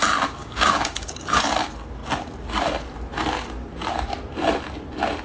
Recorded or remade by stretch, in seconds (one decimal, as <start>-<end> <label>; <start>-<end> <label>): 0.0-0.4 recorded; 0.4-1.4 remade; 1.4-5.2 recorded